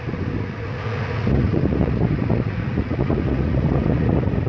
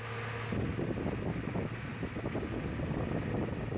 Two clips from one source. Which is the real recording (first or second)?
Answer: second